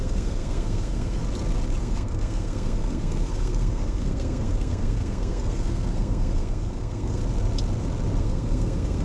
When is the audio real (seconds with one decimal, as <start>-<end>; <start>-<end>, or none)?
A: 1.2-1.8; 7.2-8.2